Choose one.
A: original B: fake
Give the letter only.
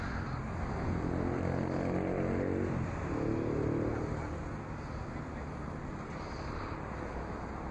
A